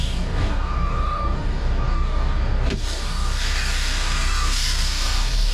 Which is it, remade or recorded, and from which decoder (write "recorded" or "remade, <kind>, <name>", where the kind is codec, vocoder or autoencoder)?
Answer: remade, codec, DAC